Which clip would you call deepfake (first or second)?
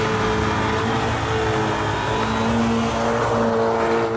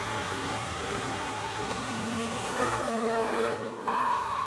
second